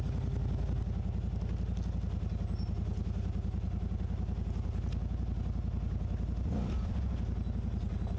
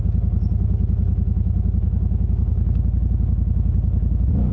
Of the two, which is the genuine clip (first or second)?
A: first